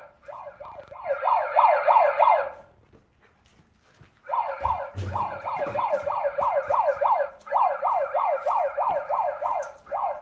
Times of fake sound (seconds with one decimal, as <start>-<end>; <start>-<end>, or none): none